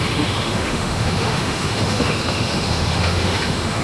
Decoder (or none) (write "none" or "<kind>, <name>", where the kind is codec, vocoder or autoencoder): autoencoder, DAC-VAE